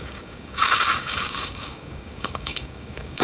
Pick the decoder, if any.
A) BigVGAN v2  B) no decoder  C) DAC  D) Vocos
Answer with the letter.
C